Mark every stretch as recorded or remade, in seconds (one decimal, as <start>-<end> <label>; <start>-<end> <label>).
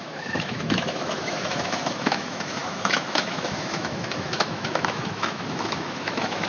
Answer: 0.0-6.5 remade